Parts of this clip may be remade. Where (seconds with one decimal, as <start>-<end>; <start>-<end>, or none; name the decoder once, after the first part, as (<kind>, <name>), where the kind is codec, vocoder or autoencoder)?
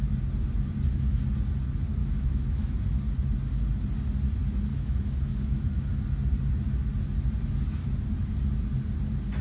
2.0-2.8 (autoencoder, DAC-VAE); 4.7-5.9